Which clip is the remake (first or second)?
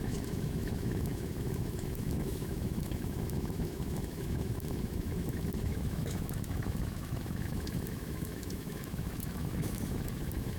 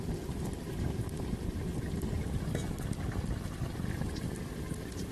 first